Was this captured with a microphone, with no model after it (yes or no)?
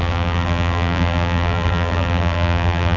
no